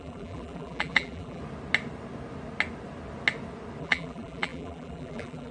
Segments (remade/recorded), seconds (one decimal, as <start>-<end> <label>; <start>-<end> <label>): 0.0-1.4 remade; 1.4-3.8 recorded; 3.8-5.5 remade